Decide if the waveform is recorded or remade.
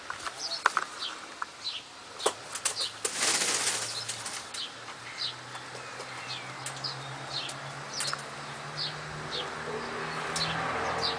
recorded